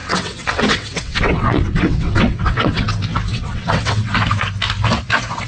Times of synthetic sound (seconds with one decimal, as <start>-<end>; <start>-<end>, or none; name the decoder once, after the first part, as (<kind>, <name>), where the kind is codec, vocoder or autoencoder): 0.0-2.9 (vocoder, WaveNeXt); 3.3-4.1